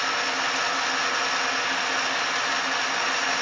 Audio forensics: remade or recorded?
recorded